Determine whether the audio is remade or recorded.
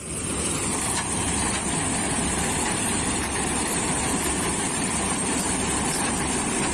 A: remade